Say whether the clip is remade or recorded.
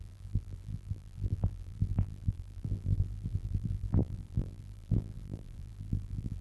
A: remade